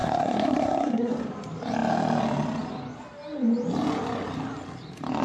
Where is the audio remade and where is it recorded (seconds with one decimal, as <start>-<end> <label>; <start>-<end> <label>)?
0.0-1.1 remade; 1.1-5.2 recorded